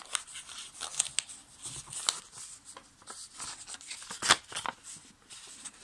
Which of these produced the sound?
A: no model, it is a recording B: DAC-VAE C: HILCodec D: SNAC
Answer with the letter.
A